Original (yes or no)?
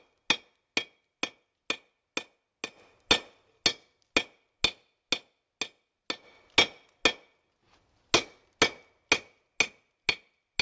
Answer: yes